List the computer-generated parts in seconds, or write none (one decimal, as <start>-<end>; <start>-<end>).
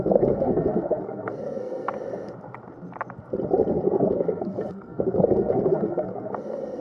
0.0-1.9; 3.7-6.8